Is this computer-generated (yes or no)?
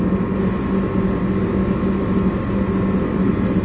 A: no